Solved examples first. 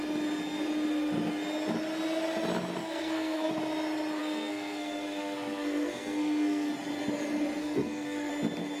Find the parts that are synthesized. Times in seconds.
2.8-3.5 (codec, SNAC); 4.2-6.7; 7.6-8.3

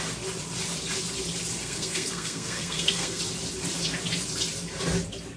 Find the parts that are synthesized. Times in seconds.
1.6-3.2 (codec, SNAC)

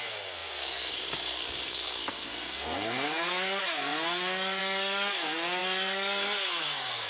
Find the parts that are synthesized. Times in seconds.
0.0-7.1 (codec, SNAC)

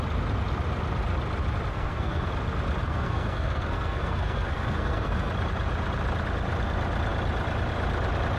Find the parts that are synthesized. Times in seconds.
1.7-2.3 (codec, SNAC); 2.8-5.3